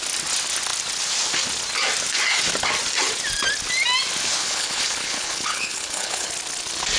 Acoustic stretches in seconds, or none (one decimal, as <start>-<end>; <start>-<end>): 0.0-4.4; 6.3-7.0